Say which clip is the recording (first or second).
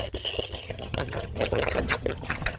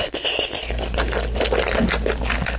second